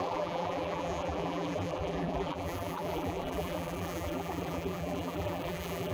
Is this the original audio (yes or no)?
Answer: no